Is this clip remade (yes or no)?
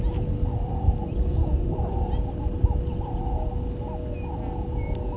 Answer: no